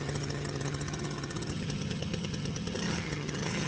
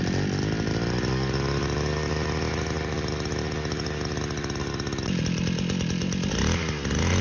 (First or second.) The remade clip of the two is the first